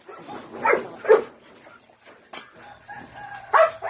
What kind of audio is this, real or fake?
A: real